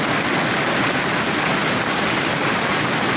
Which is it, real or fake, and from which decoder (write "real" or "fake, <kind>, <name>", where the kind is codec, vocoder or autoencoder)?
real